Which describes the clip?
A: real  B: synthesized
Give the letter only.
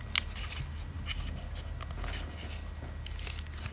A